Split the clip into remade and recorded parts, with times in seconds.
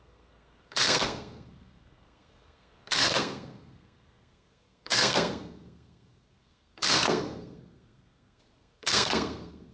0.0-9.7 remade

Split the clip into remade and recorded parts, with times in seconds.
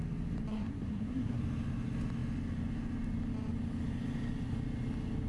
0.0-0.5 recorded; 0.5-1.4 remade; 1.4-5.3 recorded